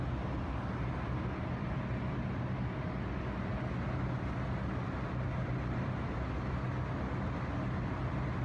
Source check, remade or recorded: recorded